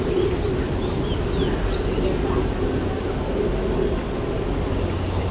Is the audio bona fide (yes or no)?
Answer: yes